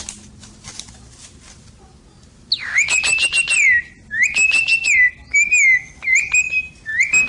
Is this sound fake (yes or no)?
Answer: no